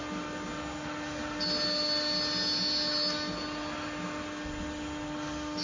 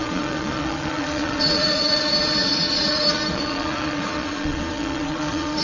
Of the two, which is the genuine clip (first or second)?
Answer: first